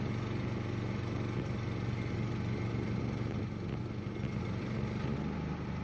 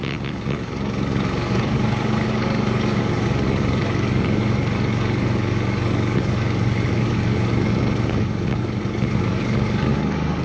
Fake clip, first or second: second